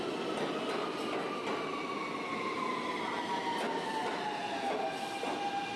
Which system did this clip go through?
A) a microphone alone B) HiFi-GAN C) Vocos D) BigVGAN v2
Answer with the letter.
A